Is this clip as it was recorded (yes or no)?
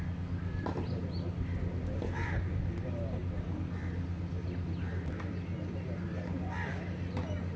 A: yes